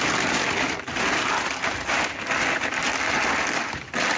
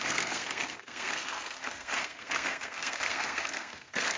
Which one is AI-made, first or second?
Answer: second